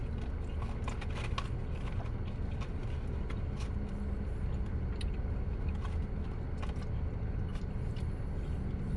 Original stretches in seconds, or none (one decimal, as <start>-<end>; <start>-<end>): 0.0-9.0